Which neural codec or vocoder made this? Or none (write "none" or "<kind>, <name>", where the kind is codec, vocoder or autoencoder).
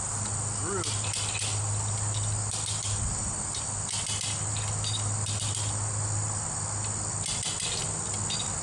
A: none